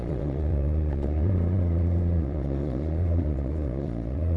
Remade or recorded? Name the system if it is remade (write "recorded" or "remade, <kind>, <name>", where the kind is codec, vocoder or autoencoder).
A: remade, vocoder, Vocos